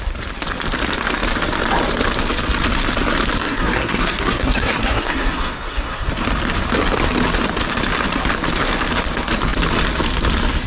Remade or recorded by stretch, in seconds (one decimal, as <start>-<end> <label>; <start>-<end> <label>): 0.0-3.3 recorded; 3.3-6.1 remade; 6.1-10.7 recorded